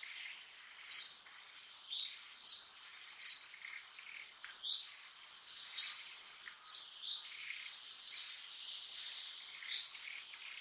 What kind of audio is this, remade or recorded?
recorded